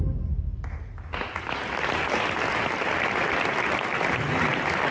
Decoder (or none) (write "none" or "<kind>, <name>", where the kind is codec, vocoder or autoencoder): none